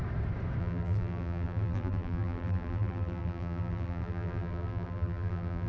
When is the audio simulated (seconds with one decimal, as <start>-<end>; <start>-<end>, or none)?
0.6-5.7